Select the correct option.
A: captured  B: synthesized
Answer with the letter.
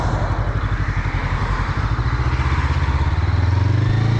A